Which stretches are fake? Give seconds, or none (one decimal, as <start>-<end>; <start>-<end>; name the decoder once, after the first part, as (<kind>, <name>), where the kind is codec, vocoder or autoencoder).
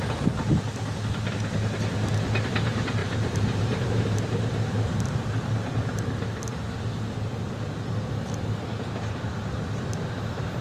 3.0-6.1 (vocoder, BigVGAN v2)